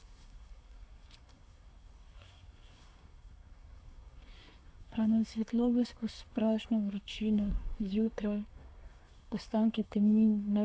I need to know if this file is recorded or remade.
remade